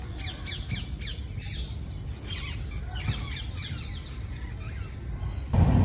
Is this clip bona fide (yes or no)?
yes